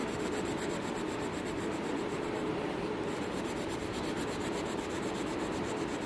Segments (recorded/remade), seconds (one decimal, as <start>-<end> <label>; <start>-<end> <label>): 0.0-3.7 remade; 3.7-6.1 recorded